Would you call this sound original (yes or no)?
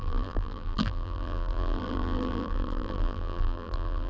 no